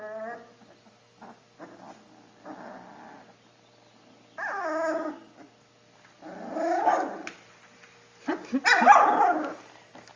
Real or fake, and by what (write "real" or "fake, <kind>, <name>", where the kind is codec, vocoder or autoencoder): real